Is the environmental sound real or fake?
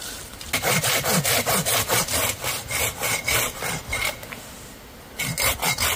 real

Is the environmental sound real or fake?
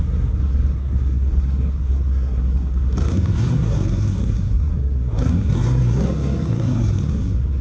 fake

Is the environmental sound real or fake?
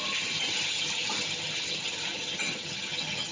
fake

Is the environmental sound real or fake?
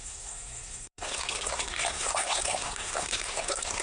fake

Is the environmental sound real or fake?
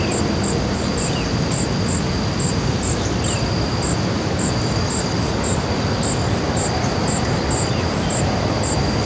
real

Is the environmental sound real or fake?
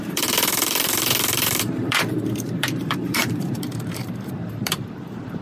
fake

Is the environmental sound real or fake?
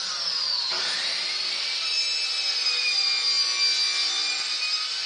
real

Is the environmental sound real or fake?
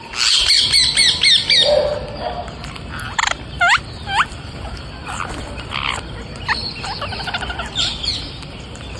real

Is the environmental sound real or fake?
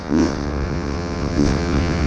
fake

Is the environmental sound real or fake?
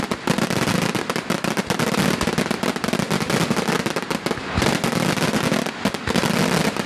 real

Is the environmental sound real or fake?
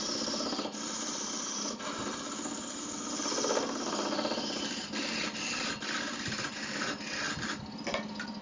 real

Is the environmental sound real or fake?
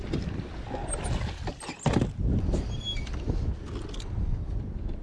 real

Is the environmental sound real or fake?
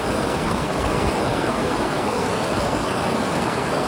fake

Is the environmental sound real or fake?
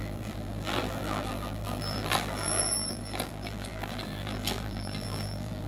fake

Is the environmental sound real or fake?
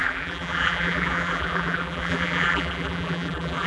fake